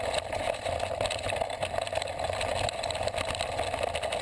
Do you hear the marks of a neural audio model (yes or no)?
no